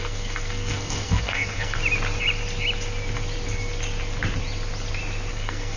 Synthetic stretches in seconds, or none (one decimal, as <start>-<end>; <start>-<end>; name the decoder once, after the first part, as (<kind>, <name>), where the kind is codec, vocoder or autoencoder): 0.0-1.8 (codec, SNAC); 5.3-5.8